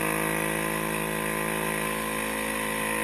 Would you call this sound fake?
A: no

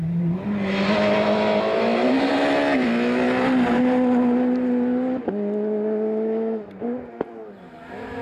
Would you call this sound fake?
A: no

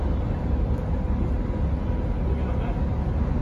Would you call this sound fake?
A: no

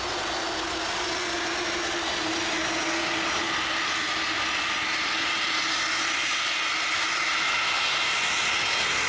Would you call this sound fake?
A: no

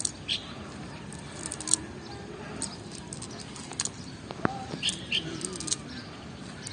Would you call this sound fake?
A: no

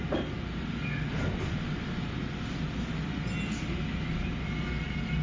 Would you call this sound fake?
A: no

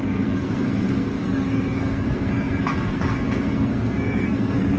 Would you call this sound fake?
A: yes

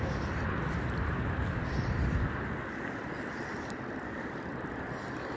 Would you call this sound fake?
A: no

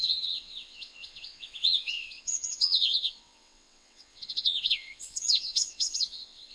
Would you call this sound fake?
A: yes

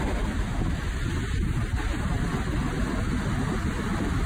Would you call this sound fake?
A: no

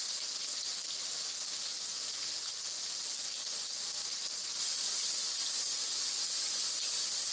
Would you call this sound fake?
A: no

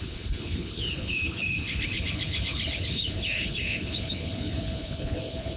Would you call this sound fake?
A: yes